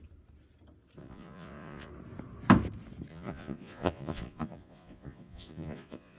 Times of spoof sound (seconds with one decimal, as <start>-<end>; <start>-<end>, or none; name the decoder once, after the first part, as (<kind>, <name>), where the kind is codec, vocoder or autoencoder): 1.0-1.9 (vocoder, Vocos); 3.1-6.2